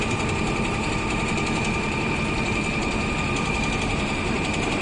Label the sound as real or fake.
fake